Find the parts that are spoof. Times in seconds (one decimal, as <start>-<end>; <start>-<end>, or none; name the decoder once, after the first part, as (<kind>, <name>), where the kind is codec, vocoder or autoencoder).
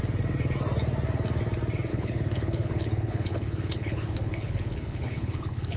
1.9-5.8 (codec, HILCodec)